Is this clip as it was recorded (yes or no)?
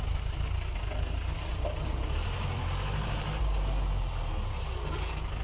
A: yes